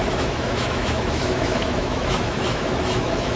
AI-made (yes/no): yes